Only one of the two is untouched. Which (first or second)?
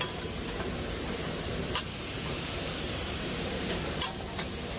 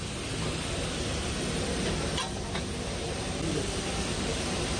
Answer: second